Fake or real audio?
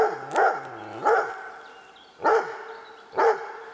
real